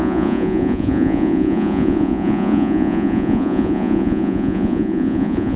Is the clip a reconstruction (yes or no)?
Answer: yes